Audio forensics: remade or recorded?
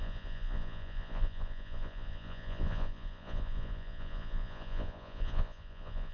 remade